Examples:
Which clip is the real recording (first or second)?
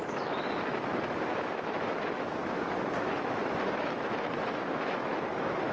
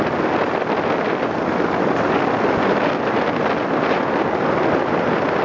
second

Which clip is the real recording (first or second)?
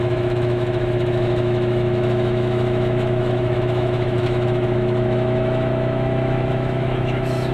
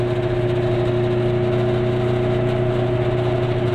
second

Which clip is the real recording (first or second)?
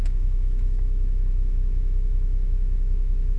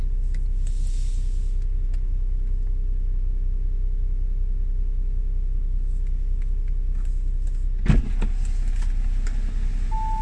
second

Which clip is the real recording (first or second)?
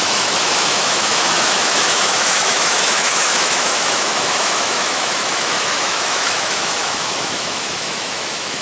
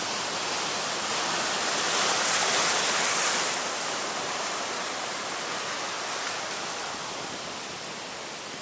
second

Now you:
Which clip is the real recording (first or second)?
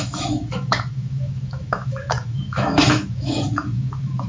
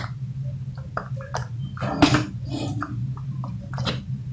second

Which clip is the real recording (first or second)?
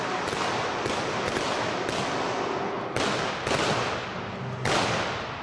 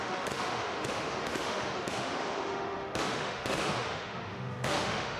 first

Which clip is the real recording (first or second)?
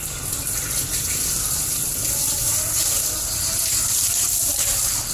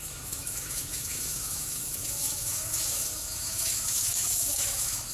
first